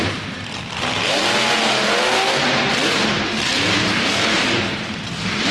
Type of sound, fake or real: fake